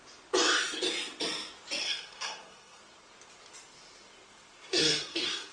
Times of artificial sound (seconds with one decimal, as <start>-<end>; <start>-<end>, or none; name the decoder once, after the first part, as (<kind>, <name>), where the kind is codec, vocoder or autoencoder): 1.8-2.8 (codec, SNAC); 4.7-5.5